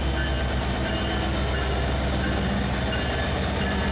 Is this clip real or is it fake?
real